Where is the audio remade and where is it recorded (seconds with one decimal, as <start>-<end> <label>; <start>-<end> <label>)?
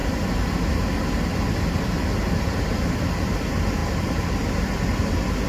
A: 0.0-5.5 recorded